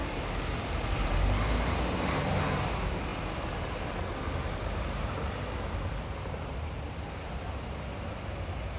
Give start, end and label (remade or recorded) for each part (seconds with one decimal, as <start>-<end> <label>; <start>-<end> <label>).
0.0-8.8 recorded